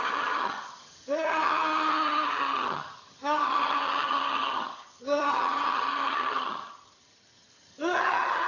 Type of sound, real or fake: fake